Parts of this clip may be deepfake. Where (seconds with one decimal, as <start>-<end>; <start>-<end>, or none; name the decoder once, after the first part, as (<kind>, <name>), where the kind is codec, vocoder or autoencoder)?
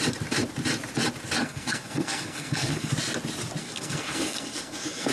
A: 1.4-2.9 (codec, SNAC); 3.6-5.1